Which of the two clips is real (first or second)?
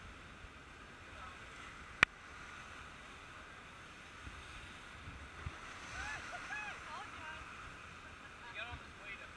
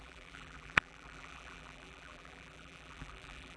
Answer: first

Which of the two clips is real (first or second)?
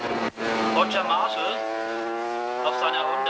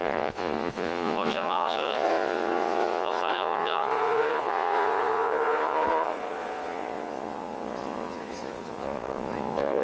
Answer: first